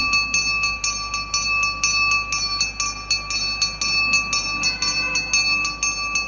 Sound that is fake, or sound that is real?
real